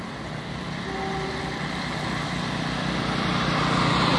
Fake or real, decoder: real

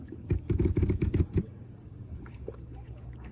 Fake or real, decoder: fake, codec, DAC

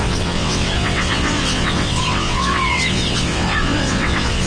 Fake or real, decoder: fake, vocoder, WaveNeXt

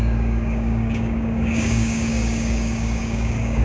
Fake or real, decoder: fake, codec, DAC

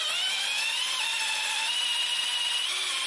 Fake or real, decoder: real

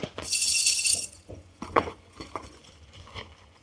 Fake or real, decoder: fake, vocoder, Vocos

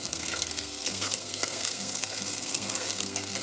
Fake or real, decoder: fake, codec, SNAC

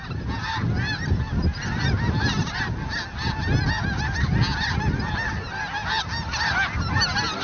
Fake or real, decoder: real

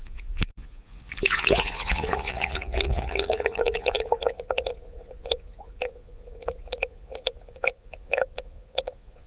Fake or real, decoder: fake, vocoder, Vocos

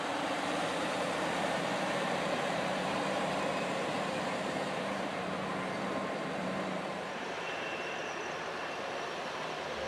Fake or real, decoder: fake, vocoder, BigVGAN v2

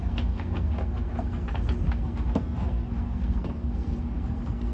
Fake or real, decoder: fake, codec, SNAC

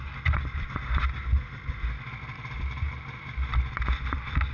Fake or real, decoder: real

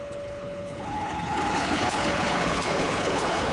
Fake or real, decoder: fake, codec, HILCodec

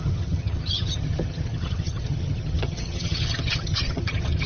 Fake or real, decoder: fake, vocoder, HiFi-GAN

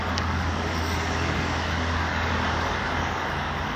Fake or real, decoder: fake, codec, DAC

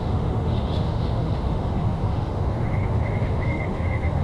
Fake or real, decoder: fake, autoencoder, DAC-VAE